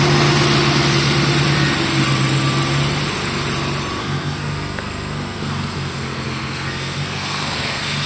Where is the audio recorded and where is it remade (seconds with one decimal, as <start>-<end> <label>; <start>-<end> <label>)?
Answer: 0.0-4.0 recorded; 4.0-8.1 remade